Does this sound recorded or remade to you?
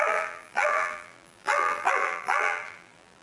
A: remade